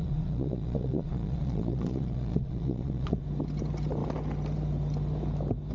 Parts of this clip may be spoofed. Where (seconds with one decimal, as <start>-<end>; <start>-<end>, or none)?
0.0-3.2